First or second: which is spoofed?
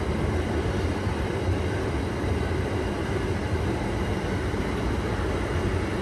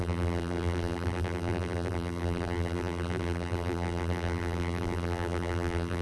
second